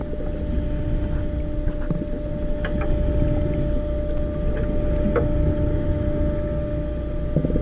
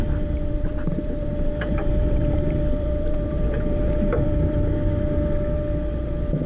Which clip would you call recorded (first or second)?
first